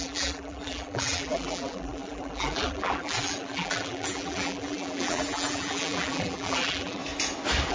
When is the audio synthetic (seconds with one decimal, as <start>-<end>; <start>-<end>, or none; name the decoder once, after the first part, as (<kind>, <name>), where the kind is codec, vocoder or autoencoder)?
0.0-7.0 (vocoder, BigVGAN v2)